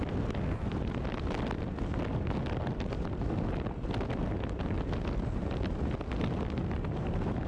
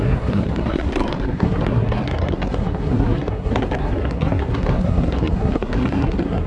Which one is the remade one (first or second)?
second